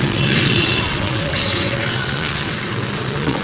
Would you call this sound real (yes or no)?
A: no